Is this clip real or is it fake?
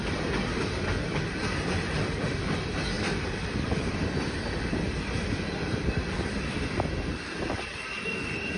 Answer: fake